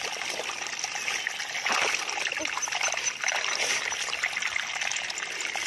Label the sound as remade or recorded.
recorded